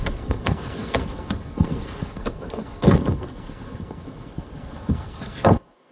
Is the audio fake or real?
fake